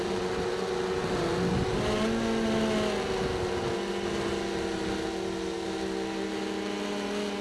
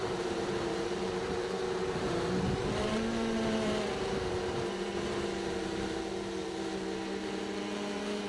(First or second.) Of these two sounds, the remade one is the second